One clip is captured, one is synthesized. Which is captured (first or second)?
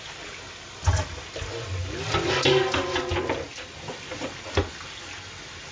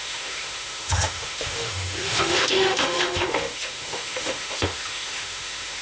first